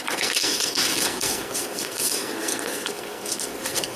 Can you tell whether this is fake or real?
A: fake